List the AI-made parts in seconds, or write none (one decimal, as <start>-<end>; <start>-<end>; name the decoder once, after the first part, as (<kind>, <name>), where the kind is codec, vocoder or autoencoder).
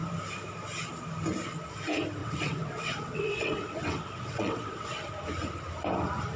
2.2-5.1 (vocoder, WaveNeXt)